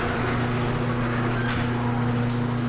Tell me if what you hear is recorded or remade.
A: recorded